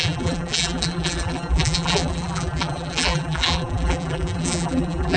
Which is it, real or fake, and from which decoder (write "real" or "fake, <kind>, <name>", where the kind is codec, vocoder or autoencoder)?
fake, vocoder, BigVGAN v2